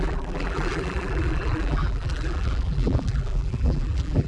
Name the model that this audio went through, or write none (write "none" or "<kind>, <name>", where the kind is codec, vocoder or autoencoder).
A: vocoder, BigVGAN v2